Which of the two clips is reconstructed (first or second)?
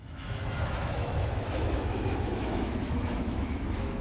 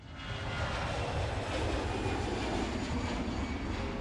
first